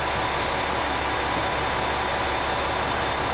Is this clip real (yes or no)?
yes